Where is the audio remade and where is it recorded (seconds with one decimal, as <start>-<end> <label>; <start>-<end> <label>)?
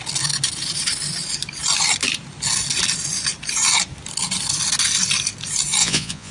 0.0-5.8 recorded; 5.8-6.3 remade